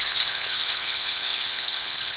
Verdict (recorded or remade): remade